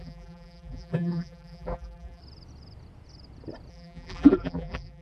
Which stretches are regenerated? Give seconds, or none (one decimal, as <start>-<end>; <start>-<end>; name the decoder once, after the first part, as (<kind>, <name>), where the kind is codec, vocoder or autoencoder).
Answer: 0.0-2.2 (vocoder, BigVGAN v2); 3.7-5.0